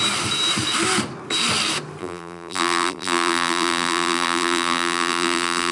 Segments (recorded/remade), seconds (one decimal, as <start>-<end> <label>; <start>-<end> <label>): 0.0-2.0 recorded; 2.0-5.7 remade